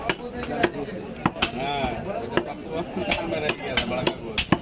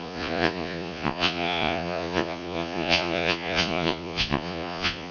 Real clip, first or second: first